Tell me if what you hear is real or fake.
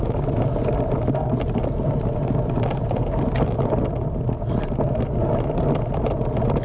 real